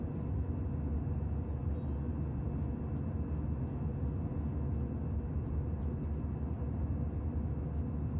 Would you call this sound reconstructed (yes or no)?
no